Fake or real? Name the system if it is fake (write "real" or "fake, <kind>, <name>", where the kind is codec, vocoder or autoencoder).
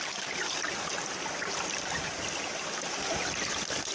real